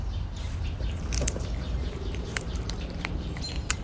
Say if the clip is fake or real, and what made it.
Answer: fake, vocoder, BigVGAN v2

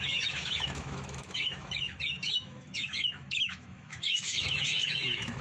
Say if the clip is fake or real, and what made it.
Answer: fake, autoencoder, DAC-VAE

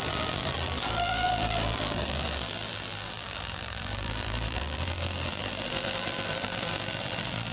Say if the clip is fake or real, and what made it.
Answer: fake, vocoder, BigVGAN v2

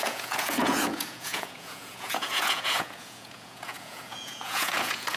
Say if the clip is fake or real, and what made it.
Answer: fake, vocoder, Vocos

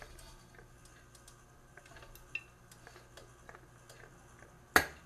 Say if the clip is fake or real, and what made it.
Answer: real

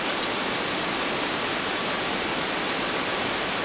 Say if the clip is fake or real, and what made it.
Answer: real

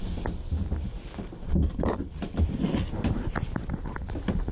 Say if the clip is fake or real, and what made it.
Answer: fake, vocoder, BigVGAN v2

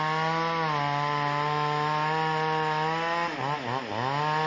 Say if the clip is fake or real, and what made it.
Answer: real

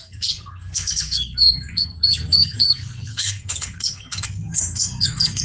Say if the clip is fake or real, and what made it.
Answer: fake, codec, SNAC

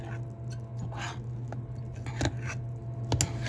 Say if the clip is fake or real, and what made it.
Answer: real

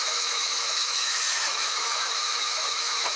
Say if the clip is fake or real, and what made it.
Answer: fake, autoencoder, DAC-VAE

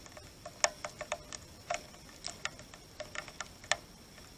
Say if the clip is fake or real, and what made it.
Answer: real